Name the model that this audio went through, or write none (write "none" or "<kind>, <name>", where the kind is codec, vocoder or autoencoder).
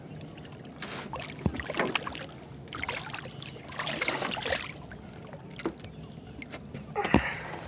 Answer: none